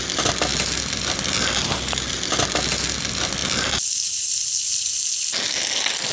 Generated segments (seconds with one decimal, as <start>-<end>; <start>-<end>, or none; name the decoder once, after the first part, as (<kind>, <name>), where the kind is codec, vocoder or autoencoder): 3.4-5.0 (vocoder, BigVGAN v2)